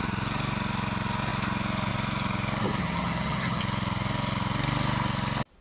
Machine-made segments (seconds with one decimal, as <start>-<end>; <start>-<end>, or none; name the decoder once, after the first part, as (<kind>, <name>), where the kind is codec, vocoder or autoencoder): 2.8-3.6 (vocoder, HiFi-GAN)